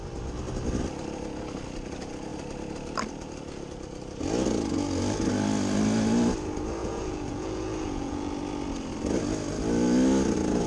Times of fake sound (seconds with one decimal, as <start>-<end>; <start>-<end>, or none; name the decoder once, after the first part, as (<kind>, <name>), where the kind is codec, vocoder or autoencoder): 6.8-8.3 (vocoder, Vocos)